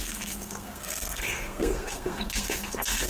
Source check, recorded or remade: remade